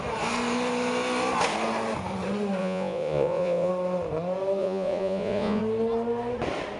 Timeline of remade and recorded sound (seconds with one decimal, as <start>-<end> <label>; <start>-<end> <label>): 0.0-2.6 recorded; 2.6-3.7 remade; 3.7-4.6 recorded; 4.6-5.6 remade; 5.6-6.8 recorded

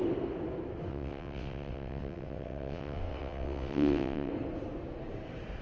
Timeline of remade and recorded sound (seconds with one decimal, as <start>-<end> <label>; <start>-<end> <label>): 0.0-0.9 recorded; 0.9-4.3 remade; 4.3-5.6 recorded